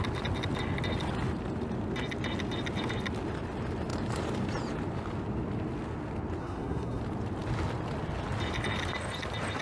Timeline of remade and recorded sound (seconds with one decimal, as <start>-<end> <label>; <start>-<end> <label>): 0.0-6.4 recorded; 6.4-7.0 remade; 7.0-9.6 recorded